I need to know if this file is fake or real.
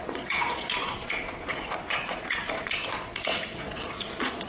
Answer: fake